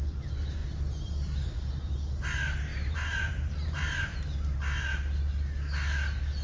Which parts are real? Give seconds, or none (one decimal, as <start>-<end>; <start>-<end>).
0.0-2.7; 4.2-6.4